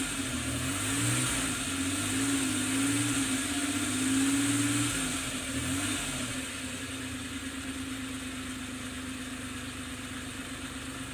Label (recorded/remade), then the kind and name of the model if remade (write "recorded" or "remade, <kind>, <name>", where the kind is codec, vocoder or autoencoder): recorded